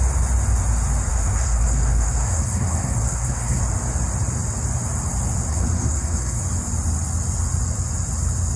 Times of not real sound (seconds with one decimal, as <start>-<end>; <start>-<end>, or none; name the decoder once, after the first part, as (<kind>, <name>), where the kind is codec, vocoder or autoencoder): 1.1-3.6 (codec, SNAC); 5.5-6.4